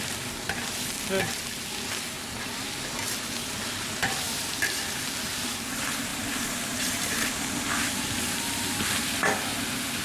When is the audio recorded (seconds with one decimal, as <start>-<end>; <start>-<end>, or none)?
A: 0.0-6.1; 7.4-10.0